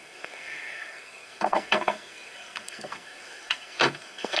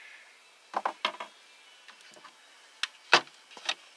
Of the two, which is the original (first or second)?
second